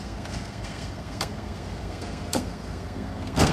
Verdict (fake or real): fake